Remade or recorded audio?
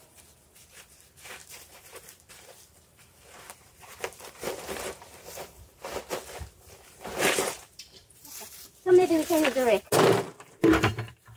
remade